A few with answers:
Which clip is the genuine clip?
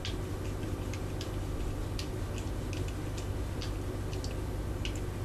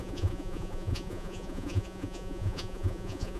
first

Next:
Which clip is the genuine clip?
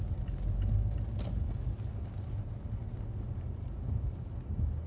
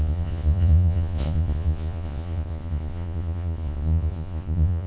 first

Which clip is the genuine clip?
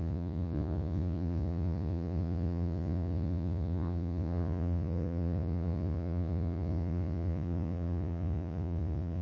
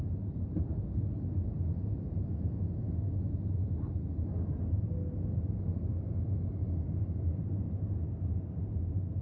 second